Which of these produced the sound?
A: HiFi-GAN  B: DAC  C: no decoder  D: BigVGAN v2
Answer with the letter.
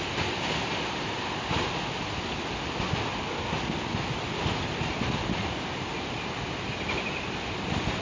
C